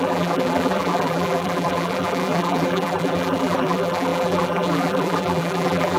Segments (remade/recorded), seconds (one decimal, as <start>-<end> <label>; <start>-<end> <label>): 0.0-6.0 remade

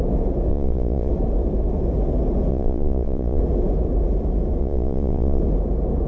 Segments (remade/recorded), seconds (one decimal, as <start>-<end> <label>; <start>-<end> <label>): 0.0-0.5 recorded; 0.5-1.1 remade; 1.1-2.5 recorded; 2.5-3.4 remade; 3.4-4.6 recorded; 4.6-5.4 remade; 5.4-6.1 recorded

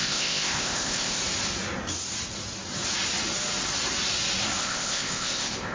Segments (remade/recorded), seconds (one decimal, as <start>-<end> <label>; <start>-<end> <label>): 0.0-1.2 remade; 1.2-4.6 recorded; 4.6-5.7 remade

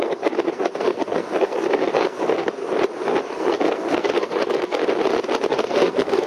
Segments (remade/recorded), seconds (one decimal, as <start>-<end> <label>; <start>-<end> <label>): 0.0-2.6 remade; 2.6-3.2 recorded; 3.2-4.8 remade; 4.8-5.5 recorded; 5.5-6.3 remade

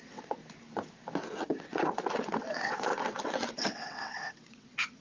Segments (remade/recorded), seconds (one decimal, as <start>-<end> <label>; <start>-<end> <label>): 0.0-0.4 remade; 0.4-1.3 recorded; 1.3-5.0 remade

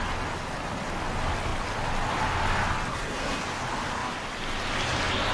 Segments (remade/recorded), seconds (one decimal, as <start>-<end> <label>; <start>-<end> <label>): 0.0-2.9 recorded; 2.9-3.4 remade; 3.4-5.3 recorded

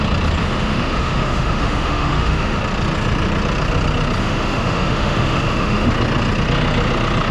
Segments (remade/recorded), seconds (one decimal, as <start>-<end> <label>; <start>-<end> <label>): 0.0-0.4 recorded; 0.4-2.6 remade; 2.6-4.2 recorded; 4.2-5.9 remade; 5.9-7.3 recorded

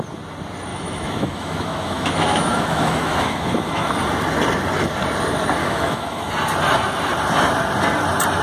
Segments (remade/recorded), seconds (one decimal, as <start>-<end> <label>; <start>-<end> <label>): 0.0-0.7 recorded; 0.7-3.9 remade; 3.9-5.6 recorded; 5.6-6.3 remade; 6.3-8.4 recorded